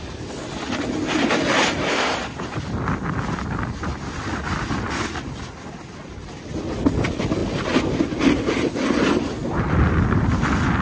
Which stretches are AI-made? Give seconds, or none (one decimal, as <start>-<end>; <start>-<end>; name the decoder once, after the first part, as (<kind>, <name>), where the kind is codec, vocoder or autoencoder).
none